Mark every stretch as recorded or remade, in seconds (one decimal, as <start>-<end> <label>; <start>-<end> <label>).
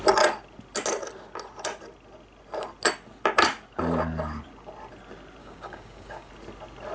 0.0-5.4 recorded; 5.4-6.3 remade; 6.3-6.9 recorded